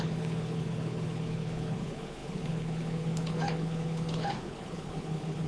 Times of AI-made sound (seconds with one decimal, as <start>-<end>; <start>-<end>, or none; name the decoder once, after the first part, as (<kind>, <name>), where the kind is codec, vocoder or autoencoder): 0.0-5.5 (codec, HILCodec)